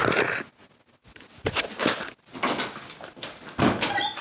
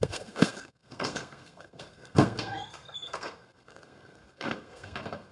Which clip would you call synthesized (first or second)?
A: second